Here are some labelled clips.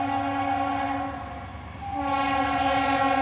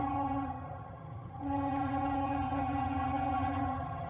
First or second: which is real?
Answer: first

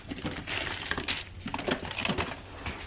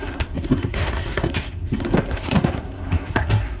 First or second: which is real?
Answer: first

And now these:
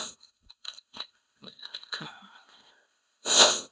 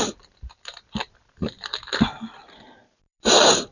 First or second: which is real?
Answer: second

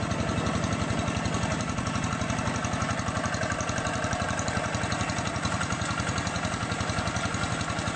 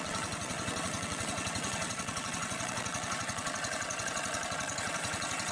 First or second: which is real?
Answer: first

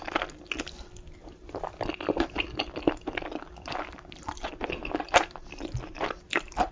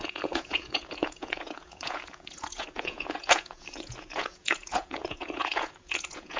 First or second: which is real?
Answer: first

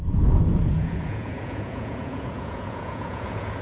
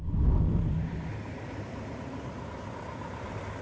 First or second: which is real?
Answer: second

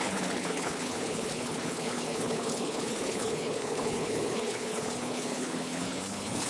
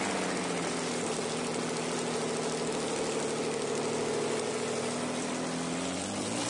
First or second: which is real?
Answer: second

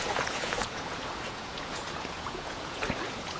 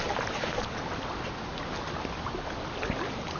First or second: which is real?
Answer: second